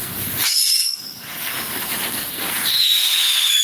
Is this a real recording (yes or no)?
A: no